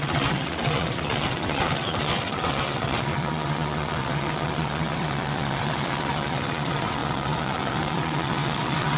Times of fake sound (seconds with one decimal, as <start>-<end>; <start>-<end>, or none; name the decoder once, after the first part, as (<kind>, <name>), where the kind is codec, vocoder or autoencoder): 0.0-9.0 (vocoder, WaveNeXt)